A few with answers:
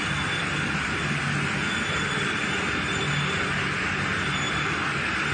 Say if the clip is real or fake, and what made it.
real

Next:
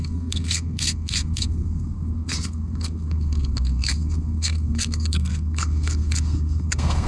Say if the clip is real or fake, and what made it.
fake, codec, SNAC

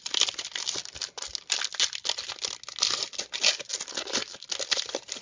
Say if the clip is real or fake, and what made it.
real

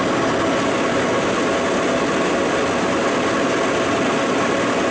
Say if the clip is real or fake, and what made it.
real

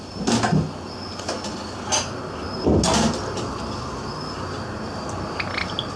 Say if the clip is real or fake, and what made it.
real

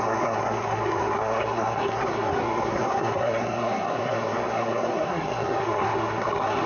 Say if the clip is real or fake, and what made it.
fake, codec, SNAC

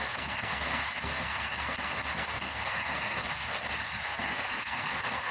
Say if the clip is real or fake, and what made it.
fake, codec, SNAC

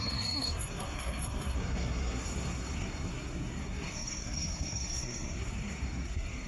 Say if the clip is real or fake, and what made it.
fake, codec, SNAC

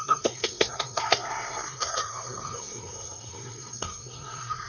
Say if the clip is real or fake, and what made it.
fake, codec, SNAC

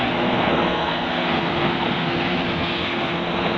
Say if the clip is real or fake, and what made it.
fake, codec, SNAC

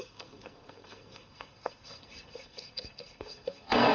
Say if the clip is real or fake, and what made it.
fake, codec, SNAC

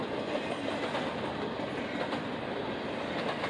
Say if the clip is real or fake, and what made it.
real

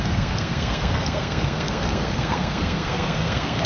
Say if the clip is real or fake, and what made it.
fake, codec, SNAC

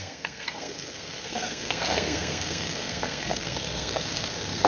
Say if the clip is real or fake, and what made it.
fake, codec, SNAC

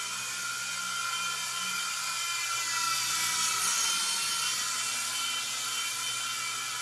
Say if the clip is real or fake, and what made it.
real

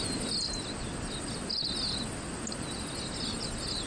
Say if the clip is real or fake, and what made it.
real